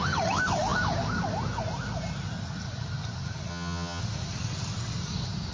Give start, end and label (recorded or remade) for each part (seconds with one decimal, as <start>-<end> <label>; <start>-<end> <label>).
0.0-3.5 recorded; 3.5-4.0 remade; 4.0-5.5 recorded

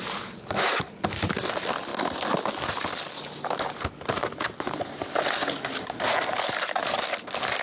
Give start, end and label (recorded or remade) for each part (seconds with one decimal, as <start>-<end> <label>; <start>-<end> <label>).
0.0-7.6 recorded

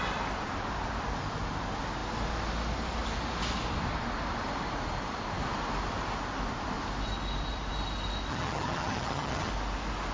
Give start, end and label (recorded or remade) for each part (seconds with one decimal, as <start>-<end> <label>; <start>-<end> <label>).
0.0-8.3 recorded; 8.3-9.5 remade; 9.5-10.1 recorded

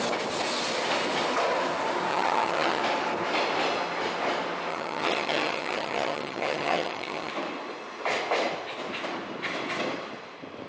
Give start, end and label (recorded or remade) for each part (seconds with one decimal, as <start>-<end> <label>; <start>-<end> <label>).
0.0-2.1 recorded; 2.1-2.8 remade; 2.8-4.7 recorded; 4.7-7.3 remade; 7.3-10.7 recorded